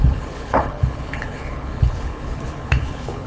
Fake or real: fake